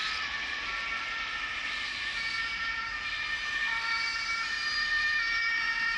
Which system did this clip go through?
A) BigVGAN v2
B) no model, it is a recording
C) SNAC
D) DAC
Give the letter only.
B